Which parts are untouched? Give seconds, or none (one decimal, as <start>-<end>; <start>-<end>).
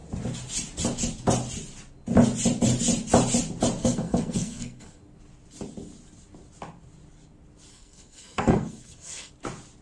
0.0-3.8; 5.0-7.7; 9.3-9.8